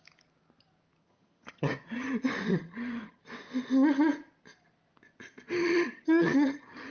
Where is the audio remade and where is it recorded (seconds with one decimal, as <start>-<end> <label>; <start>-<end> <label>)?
0.0-1.0 recorded; 1.0-2.1 remade; 2.1-2.5 recorded; 2.5-3.2 remade; 3.2-5.6 recorded; 5.6-6.9 remade